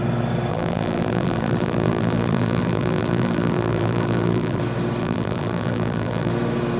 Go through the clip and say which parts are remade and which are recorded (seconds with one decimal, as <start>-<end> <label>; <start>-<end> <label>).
0.0-0.5 recorded; 0.5-4.6 remade; 4.6-5.0 recorded; 5.0-6.3 remade; 6.3-6.8 recorded